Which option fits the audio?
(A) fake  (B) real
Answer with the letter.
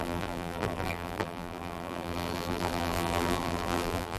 A